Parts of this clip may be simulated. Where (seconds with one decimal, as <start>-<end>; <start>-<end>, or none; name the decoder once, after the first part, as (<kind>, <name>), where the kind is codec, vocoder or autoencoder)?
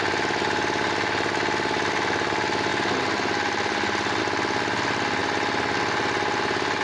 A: none